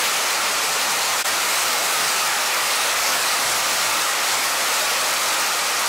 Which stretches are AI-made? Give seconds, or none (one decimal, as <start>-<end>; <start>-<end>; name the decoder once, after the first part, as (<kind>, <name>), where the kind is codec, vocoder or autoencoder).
1.1-4.6 (codec, DAC)